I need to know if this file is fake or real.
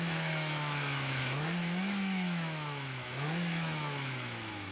fake